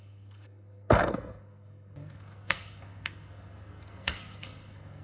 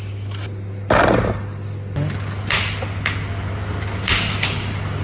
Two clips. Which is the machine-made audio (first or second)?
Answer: first